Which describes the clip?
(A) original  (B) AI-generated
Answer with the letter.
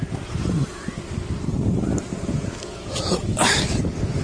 B